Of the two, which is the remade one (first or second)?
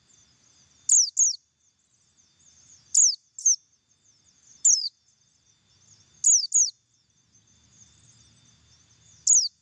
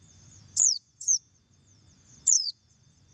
second